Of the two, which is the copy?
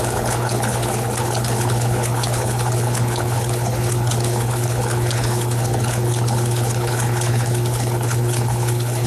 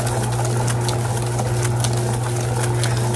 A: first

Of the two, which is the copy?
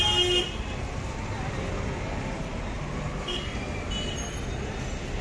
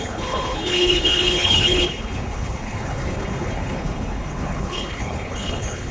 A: second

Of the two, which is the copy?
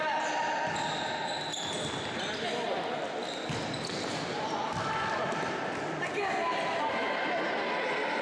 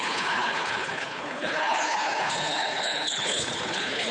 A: second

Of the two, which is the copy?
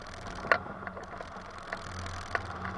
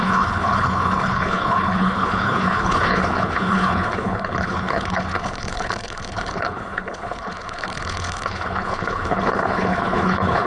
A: second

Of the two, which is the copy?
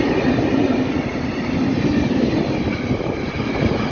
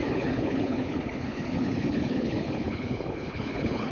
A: second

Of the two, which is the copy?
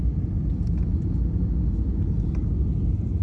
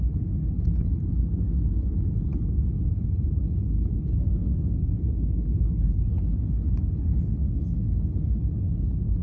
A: second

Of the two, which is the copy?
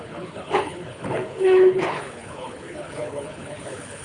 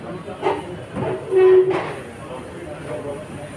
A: first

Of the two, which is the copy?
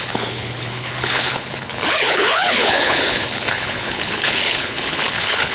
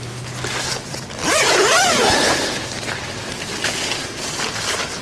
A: first